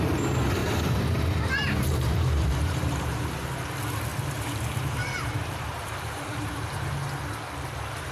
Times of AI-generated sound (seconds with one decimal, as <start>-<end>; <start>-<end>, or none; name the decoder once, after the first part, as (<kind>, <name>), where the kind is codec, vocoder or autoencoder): 0.6-3.6 (vocoder, BigVGAN v2); 4.1-7.0